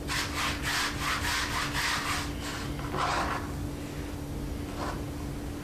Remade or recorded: recorded